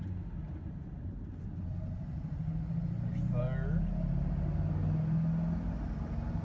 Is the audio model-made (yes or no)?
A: no